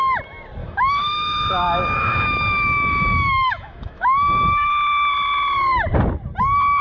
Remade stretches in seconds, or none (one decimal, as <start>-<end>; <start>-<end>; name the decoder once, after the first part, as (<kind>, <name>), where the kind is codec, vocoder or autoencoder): 0.6-4.7 (autoencoder, DAC-VAE)